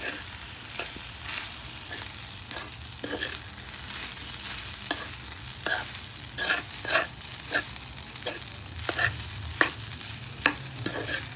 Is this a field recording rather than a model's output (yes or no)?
yes